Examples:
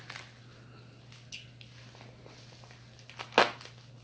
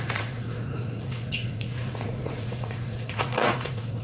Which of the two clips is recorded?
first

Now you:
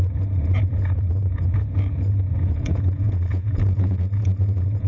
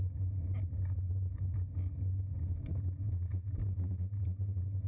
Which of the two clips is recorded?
second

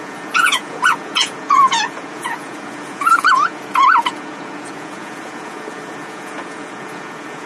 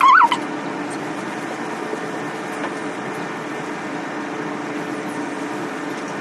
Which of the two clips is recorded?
second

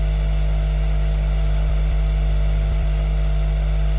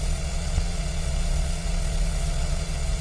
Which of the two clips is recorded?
first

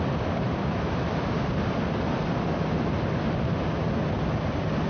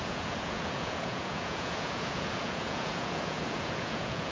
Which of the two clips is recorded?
first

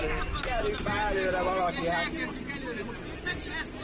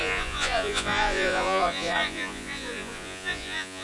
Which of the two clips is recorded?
first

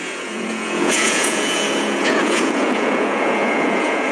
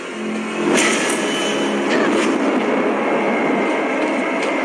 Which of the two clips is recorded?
second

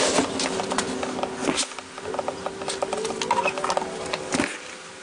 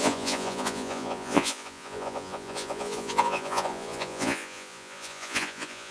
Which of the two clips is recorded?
first